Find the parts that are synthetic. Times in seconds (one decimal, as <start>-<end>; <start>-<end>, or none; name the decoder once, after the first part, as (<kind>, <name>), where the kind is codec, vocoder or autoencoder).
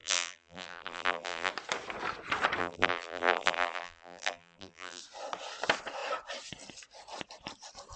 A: 0.0-1.5 (vocoder, BigVGAN v2); 2.6-5.0